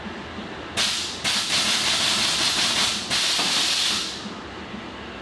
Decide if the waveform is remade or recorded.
recorded